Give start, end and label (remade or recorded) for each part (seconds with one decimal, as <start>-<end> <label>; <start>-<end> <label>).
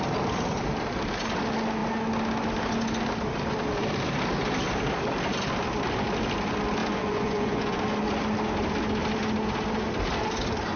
0.0-6.8 recorded; 6.8-7.8 remade; 7.8-10.8 recorded